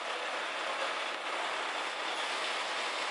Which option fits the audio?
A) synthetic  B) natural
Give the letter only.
B